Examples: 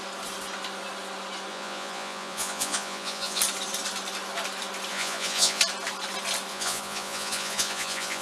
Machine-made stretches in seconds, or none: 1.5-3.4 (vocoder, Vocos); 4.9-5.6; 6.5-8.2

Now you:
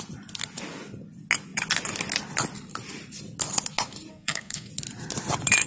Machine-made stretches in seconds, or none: 4.1-4.7 (codec, SNAC)

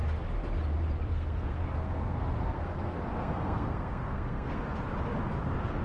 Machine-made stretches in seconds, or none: 1.1-4.6 (codec, SNAC)

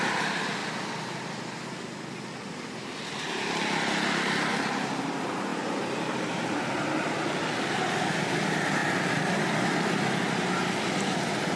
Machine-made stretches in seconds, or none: 5.5-6.6 (vocoder, BigVGAN v2)

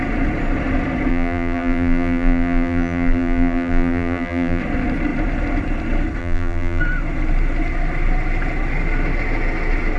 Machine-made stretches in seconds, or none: 1.1-4.6 (vocoder, BigVGAN v2); 6.2-6.8